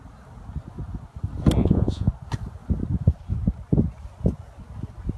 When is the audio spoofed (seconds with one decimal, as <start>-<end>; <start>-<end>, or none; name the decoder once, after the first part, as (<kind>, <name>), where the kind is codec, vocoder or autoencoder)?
1.6-2.1 (vocoder, Vocos)

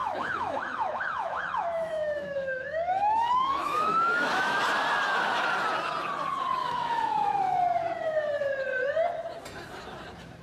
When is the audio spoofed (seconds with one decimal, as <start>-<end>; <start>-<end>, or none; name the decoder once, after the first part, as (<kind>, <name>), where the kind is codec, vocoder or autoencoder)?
0.0-4.6 (autoencoder, DAC-VAE); 6.6-7.4

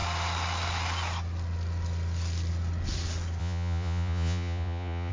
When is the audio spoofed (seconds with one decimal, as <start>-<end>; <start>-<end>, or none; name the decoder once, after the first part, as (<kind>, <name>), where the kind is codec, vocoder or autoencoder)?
3.4-5.1 (vocoder, Vocos)